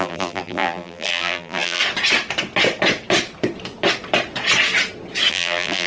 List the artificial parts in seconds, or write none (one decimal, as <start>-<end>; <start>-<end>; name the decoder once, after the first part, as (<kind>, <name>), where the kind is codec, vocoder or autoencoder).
0.0-1.8 (vocoder, BigVGAN v2); 5.3-5.9